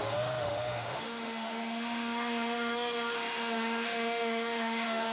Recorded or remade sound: remade